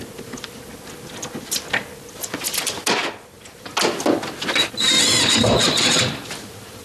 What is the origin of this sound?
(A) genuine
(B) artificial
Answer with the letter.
A